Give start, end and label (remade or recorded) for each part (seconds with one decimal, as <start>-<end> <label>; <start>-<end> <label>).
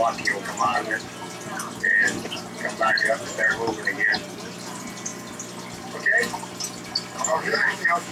0.0-7.3 recorded; 7.3-8.1 remade